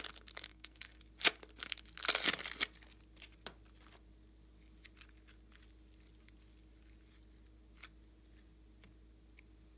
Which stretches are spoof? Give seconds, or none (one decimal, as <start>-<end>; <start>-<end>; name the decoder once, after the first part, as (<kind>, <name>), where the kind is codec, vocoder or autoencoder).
0.5-1.0 (codec, SNAC)